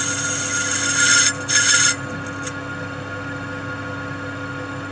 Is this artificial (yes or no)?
no